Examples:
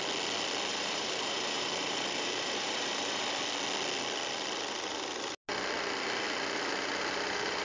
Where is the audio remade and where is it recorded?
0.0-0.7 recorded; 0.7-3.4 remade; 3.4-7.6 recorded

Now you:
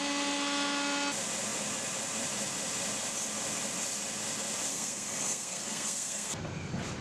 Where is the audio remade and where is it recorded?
0.0-4.7 recorded; 4.7-6.4 remade; 6.4-7.0 recorded

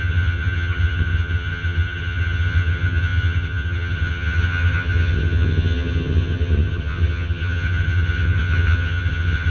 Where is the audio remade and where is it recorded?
0.0-9.5 remade

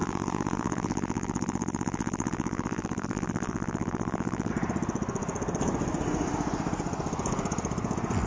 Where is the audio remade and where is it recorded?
0.0-4.5 remade; 4.5-8.3 recorded

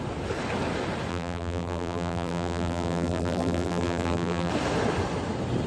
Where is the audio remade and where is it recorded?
0.0-1.1 recorded; 1.1-4.5 remade; 4.5-5.7 recorded

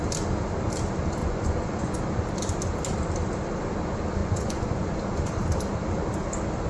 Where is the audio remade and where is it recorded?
0.0-1.2 recorded; 1.2-2.0 remade; 2.0-4.2 recorded; 4.2-5.0 remade; 5.0-6.7 recorded